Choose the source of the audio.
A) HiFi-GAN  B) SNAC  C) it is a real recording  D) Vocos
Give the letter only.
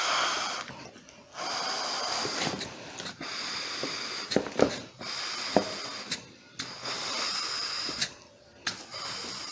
C